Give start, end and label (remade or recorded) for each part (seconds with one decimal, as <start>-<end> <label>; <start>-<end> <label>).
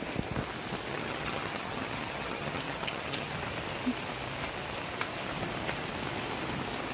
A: 0.0-0.9 recorded; 0.9-3.3 remade; 3.3-6.9 recorded